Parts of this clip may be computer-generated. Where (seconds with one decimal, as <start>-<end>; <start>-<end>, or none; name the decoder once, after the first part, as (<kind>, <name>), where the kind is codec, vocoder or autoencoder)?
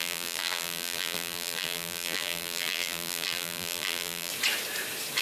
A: 0.0-4.3 (vocoder, BigVGAN v2)